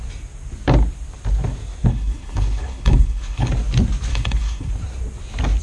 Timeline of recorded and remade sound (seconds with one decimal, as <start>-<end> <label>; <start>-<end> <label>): 0.0-1.9 recorded; 1.9-3.5 remade; 3.5-4.1 recorded; 4.1-4.7 remade; 4.7-5.6 recorded